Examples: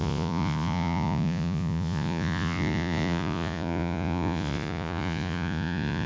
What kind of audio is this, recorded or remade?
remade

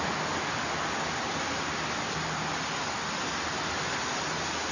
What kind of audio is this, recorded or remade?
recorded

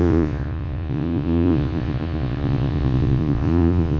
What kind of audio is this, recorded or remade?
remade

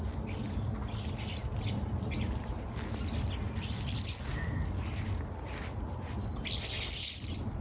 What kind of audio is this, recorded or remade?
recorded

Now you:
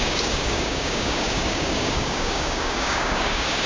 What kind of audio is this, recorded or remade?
remade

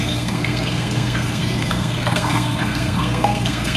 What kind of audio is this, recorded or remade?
remade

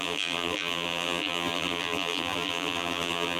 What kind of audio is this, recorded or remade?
remade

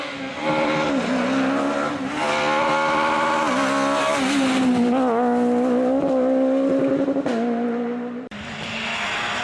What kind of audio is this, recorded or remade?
recorded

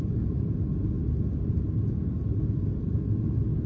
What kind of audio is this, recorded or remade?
recorded